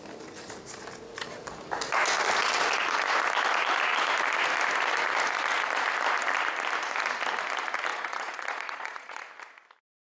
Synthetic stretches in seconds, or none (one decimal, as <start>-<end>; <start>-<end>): 7.9-9.3